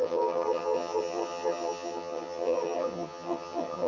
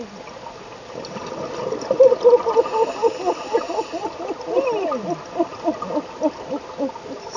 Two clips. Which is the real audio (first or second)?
second